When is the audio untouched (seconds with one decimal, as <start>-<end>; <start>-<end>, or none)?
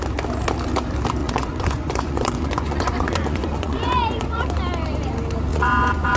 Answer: 0.0-1.2; 4.6-5.5